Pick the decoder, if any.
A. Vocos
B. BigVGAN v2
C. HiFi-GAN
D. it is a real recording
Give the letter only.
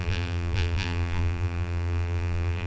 B